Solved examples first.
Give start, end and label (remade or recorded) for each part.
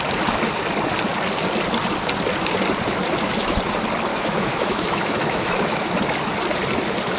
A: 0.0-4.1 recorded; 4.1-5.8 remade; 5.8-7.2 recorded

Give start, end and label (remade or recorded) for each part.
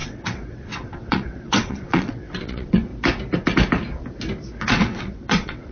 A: 0.0-2.9 remade; 2.9-4.6 recorded; 4.6-5.7 remade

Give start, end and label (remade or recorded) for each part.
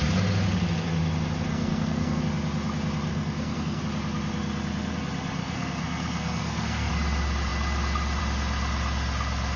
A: 0.0-1.5 recorded; 1.5-2.2 remade; 2.2-3.1 recorded; 3.1-3.8 remade; 3.8-5.4 recorded; 5.4-6.9 remade; 6.9-9.6 recorded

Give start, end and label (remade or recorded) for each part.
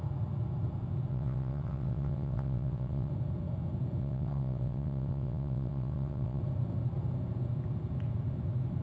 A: 0.0-1.1 recorded; 1.1-3.1 remade; 3.1-4.0 recorded; 4.0-6.4 remade; 6.4-8.8 recorded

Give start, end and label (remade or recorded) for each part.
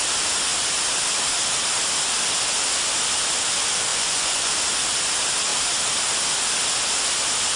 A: 0.0-3.9 recorded; 3.9-4.5 remade; 4.5-7.6 recorded